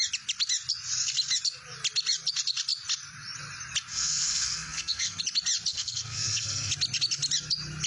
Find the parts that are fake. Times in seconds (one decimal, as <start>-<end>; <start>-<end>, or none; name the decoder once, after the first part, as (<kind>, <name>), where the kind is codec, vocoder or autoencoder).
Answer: 3.9-5.2 (codec, SNAC); 5.7-6.7